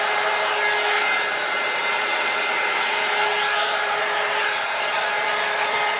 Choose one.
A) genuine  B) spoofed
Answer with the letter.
A